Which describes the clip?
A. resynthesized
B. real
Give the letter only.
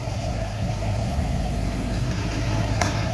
A